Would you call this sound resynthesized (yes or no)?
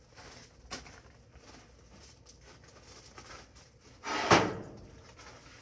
no